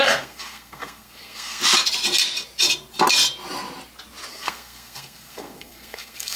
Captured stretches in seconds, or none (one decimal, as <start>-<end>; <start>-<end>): 1.6-4.3